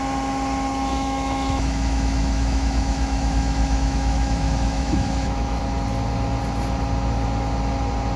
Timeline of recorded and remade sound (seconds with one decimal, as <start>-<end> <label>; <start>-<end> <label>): 0.0-0.9 recorded; 0.9-5.6 remade; 5.6-8.2 recorded